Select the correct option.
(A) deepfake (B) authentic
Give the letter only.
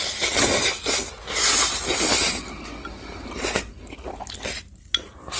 B